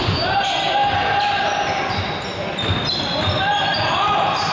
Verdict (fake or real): real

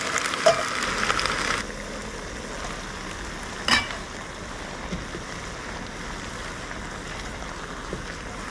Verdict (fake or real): real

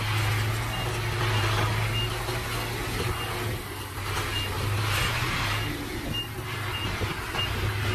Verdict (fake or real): real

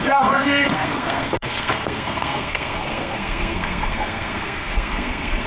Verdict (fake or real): fake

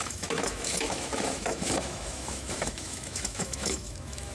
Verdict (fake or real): fake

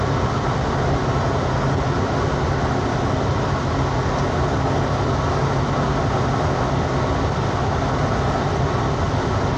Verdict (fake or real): real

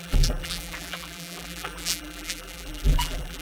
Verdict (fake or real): fake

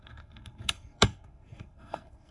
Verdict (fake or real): fake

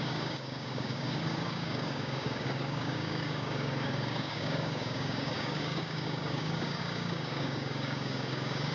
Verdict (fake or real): fake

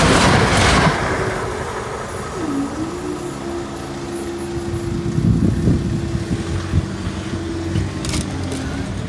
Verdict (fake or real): real